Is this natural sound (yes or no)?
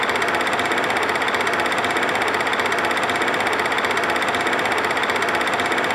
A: yes